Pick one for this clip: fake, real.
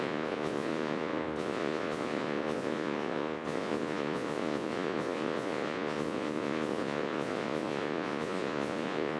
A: fake